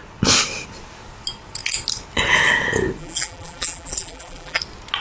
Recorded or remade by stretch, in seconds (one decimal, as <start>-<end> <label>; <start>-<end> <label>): 0.0-3.0 recorded; 3.0-4.6 remade; 4.6-5.0 recorded